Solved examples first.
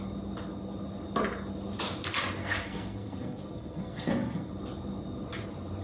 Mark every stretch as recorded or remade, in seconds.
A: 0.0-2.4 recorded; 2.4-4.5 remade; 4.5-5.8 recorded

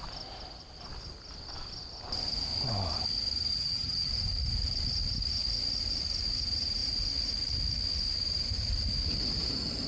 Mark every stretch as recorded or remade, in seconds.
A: 0.0-3.5 recorded; 3.5-4.1 remade; 4.1-9.9 recorded

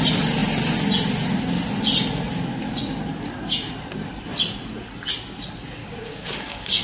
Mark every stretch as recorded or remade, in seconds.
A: 0.0-5.8 recorded; 5.8-6.8 remade

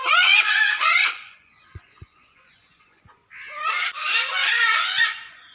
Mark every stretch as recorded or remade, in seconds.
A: 0.0-3.2 remade; 3.2-4.3 recorded; 4.3-5.5 remade

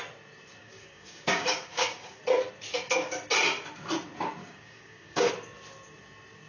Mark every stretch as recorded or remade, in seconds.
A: 0.0-0.6 recorded; 0.6-2.2 remade; 2.2-4.4 recorded; 4.4-5.3 remade; 5.3-6.5 recorded

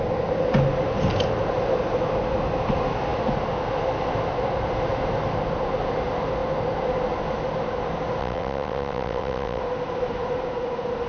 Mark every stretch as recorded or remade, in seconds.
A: 0.0-8.2 recorded; 8.2-9.6 remade; 9.6-11.1 recorded

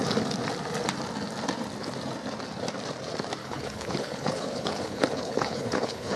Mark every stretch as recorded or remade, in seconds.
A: 0.0-3.4 recorded; 3.4-6.2 remade

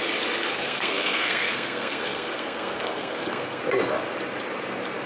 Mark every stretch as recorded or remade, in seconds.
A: 0.0-0.5 recorded; 0.5-3.6 remade; 3.6-5.1 recorded